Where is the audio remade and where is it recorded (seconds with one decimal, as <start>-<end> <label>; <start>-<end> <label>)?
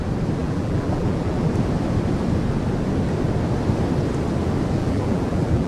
0.0-0.4 recorded; 0.4-1.5 remade; 1.5-4.8 recorded; 4.8-5.7 remade